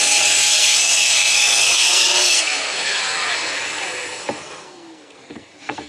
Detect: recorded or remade remade